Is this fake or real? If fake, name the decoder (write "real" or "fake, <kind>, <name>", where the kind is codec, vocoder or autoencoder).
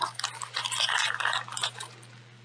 real